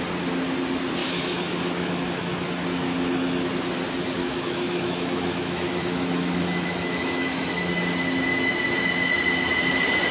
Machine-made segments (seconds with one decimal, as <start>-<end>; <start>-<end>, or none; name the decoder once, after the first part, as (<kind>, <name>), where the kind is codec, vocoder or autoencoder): 1.0-2.5 (autoencoder, DAC-VAE); 2.9-3.4; 4.2-7.7